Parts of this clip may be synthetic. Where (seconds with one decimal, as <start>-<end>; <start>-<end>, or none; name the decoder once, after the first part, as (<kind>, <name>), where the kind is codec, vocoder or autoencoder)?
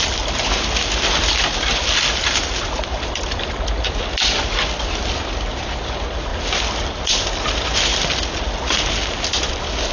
none